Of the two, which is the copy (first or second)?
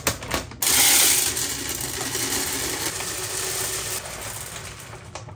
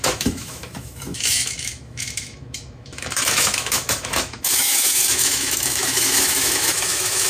second